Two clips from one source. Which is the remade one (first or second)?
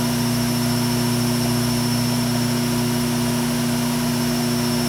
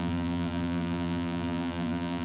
second